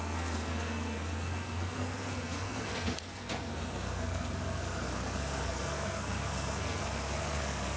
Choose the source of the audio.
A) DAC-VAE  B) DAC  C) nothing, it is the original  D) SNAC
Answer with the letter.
D